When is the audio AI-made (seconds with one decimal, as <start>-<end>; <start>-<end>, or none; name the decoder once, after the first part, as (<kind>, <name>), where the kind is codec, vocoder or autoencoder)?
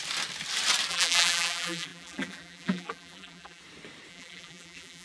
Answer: 0.9-3.6 (vocoder, BigVGAN v2); 4.1-5.0